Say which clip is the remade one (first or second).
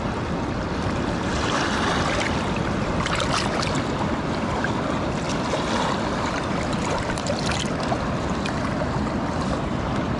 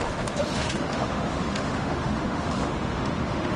second